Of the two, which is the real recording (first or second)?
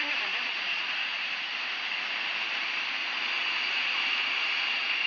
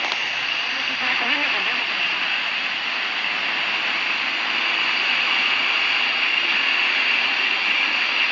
second